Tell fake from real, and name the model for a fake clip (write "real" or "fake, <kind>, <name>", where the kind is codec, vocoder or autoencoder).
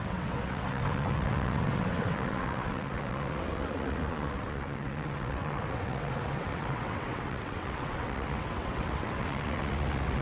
fake, vocoder, WaveNeXt